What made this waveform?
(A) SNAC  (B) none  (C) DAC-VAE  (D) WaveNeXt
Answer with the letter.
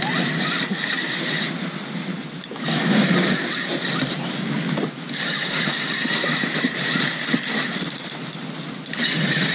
B